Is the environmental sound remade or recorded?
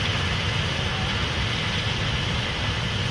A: recorded